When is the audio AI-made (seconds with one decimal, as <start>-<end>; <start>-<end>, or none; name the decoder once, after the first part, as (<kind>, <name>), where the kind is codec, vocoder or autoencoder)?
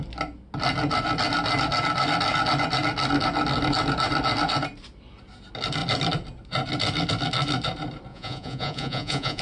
8.1-9.4 (vocoder, Vocos)